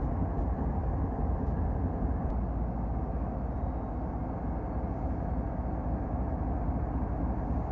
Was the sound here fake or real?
real